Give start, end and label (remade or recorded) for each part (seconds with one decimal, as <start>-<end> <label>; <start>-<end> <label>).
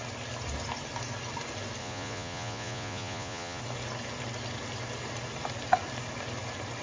0.0-1.8 recorded; 1.8-3.6 remade; 3.6-6.8 recorded